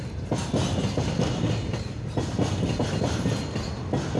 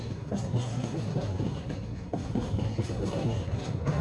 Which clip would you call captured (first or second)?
first